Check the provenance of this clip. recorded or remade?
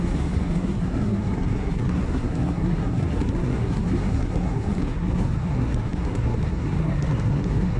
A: remade